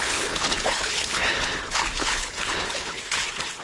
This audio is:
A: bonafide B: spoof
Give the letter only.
B